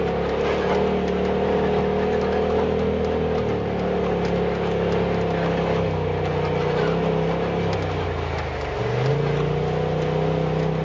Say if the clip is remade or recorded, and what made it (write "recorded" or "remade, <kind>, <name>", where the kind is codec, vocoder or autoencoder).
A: recorded